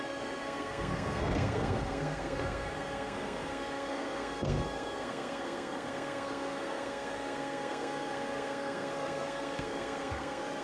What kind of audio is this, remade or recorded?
remade